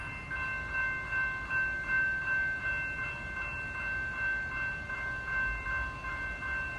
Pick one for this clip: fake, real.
real